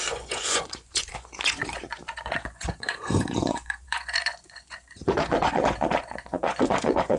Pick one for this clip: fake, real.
fake